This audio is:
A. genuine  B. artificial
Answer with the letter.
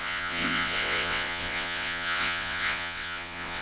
B